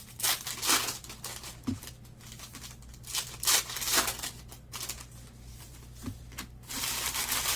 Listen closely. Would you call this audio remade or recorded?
recorded